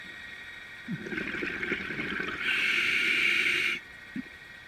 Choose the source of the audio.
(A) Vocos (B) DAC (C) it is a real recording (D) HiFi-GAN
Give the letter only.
C